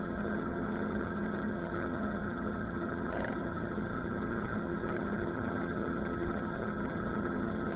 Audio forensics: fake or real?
fake